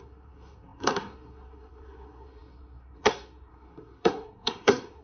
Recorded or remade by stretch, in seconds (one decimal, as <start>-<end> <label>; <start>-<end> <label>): 0.0-5.0 remade